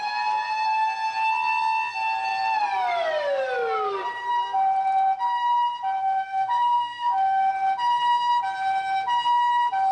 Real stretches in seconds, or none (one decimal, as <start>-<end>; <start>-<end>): 0.0-6.0; 7.5-9.9